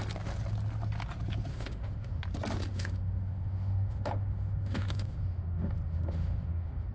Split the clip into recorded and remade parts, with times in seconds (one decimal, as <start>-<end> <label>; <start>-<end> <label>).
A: 0.0-1.5 recorded; 1.5-2.2 remade; 2.2-2.7 recorded; 2.7-6.9 remade